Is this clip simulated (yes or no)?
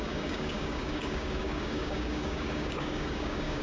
yes